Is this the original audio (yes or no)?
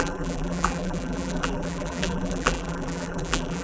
no